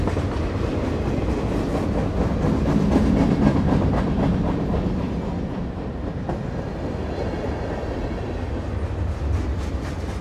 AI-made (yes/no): no